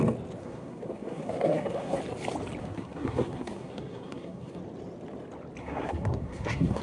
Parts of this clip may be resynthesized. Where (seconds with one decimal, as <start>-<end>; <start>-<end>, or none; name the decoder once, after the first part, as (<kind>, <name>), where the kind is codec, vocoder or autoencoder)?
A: 0.4-2.0 (codec, SNAC); 2.6-4.6; 5.6-6.8